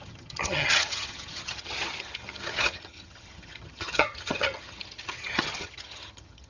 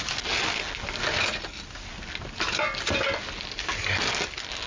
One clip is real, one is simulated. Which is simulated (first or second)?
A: first